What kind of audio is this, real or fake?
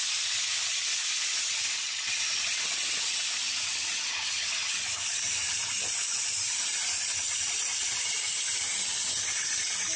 real